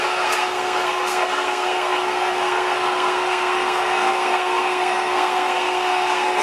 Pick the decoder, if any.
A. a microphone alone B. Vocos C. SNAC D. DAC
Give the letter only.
C